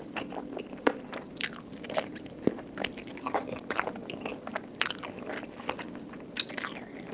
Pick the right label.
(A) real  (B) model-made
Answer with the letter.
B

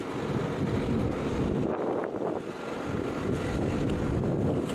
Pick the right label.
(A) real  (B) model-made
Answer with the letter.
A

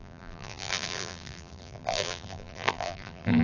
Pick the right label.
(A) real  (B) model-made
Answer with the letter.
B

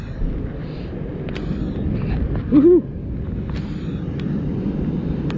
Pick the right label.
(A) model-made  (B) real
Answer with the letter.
B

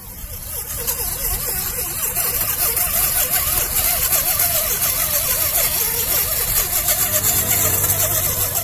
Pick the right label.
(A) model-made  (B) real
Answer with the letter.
A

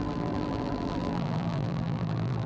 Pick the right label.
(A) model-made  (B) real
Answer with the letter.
A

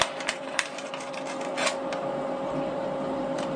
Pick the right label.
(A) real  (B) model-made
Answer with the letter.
B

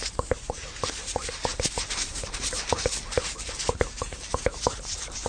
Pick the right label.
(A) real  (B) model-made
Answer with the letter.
B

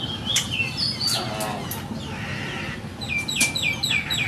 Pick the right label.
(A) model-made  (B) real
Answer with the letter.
B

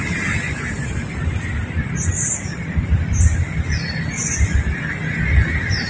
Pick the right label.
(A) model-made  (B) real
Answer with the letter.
B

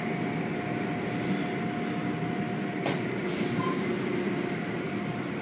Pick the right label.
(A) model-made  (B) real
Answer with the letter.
B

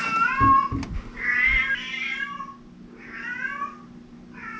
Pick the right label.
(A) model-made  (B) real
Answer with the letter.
B